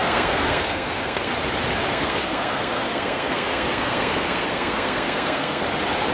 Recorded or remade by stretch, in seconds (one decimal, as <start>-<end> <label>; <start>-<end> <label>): 0.0-1.3 remade; 1.3-1.9 recorded; 1.9-5.6 remade; 5.6-6.1 recorded